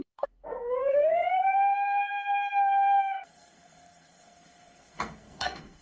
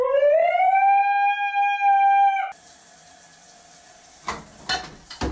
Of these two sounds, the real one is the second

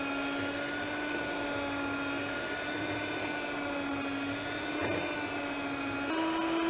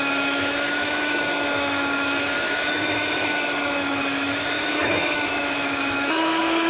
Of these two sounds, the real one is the first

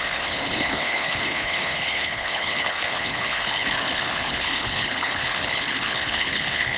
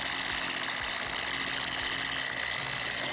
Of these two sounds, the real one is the second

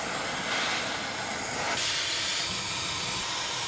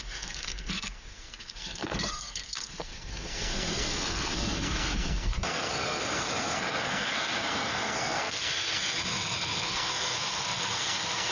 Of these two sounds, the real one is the first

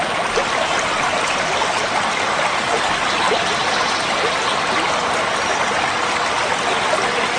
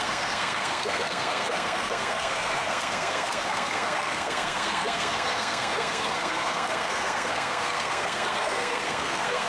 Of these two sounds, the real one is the first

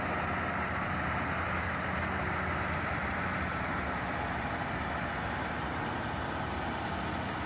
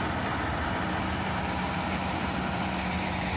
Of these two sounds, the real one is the first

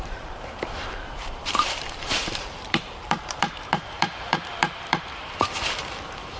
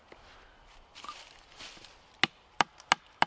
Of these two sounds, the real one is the second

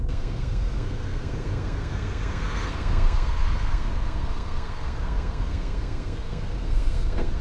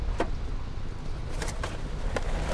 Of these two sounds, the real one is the second